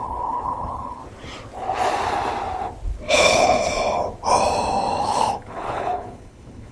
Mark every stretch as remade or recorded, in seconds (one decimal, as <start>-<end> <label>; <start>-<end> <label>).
0.0-1.0 remade; 1.0-3.1 recorded; 3.1-3.7 remade; 3.7-5.0 recorded; 5.0-6.7 remade